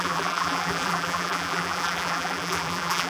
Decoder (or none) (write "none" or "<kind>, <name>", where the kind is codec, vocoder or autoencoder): vocoder, BigVGAN v2